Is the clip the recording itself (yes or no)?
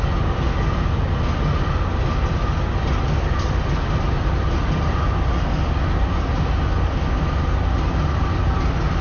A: yes